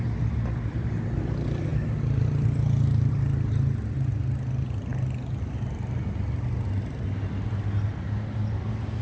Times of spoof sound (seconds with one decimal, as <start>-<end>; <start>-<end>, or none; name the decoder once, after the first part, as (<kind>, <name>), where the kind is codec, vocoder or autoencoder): none